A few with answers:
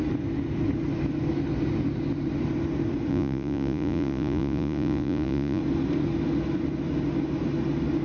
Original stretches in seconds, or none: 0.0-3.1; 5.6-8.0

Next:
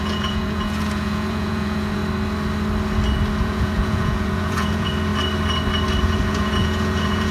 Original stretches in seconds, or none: 2.0-3.4; 5.1-6.0

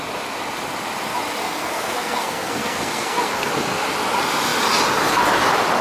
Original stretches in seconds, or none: 0.0-1.4; 3.5-5.8

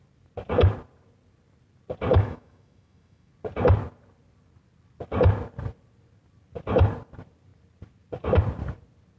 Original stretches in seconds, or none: 0.0-2.1; 3.3-9.2

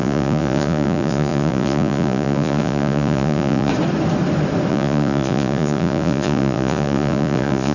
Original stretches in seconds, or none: 3.7-4.7

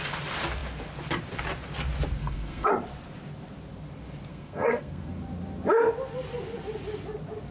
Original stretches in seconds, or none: 0.0-2.2; 2.7-4.3; 5.1-7.5